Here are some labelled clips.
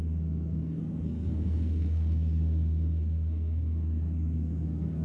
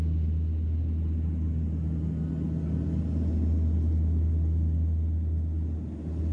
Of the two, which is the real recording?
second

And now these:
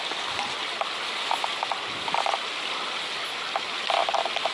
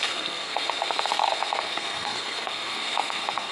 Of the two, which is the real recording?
first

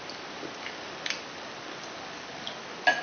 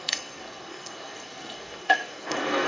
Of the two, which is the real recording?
first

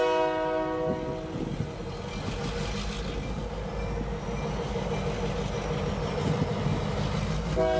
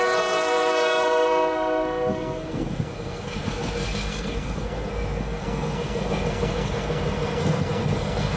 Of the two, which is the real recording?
first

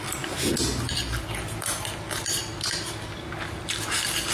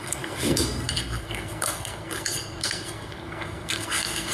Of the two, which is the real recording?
first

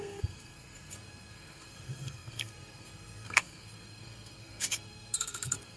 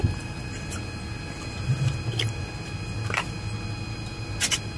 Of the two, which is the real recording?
second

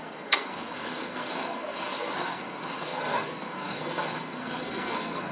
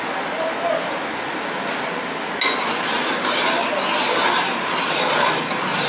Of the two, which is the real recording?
second